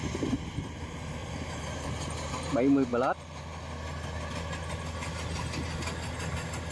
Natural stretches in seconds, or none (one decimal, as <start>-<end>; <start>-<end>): 0.0-1.2; 2.3-6.7